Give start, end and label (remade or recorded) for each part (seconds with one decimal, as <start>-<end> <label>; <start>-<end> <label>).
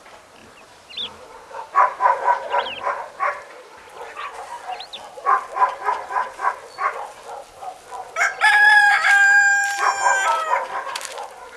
0.0-0.4 remade; 0.4-1.6 recorded; 1.6-4.9 remade; 4.9-8.5 recorded; 8.5-11.6 remade